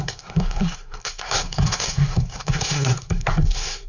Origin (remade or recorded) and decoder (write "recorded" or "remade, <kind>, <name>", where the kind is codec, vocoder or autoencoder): remade, codec, SNAC